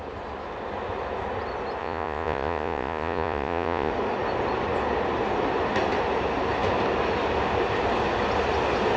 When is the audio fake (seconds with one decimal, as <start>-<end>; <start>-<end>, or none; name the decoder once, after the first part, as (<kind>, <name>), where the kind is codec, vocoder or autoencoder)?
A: 1.8-3.9 (vocoder, Vocos)